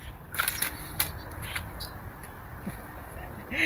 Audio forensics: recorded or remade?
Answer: recorded